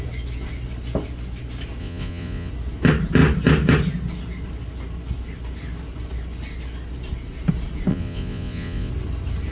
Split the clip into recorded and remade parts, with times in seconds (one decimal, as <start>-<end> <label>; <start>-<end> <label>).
0.0-1.8 recorded; 1.8-2.5 remade; 2.5-7.9 recorded; 7.9-8.9 remade; 8.9-9.5 recorded

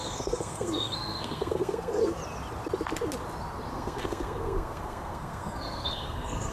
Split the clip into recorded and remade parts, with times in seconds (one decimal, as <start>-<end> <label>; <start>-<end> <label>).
0.0-2.2 remade; 2.2-3.7 recorded; 3.7-6.5 remade